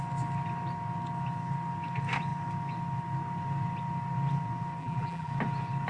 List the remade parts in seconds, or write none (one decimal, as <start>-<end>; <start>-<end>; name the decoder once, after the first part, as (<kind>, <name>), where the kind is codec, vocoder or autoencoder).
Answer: 4.8-5.3 (vocoder, BigVGAN v2)